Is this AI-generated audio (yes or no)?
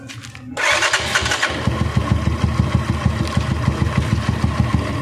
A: no